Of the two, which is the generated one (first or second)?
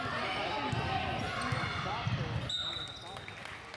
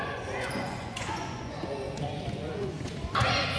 second